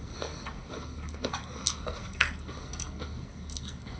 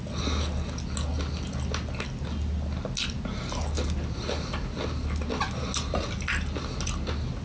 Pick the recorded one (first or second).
second